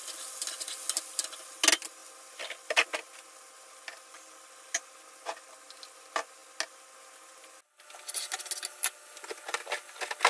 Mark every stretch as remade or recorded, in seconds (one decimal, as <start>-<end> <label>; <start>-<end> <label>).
0.0-10.3 recorded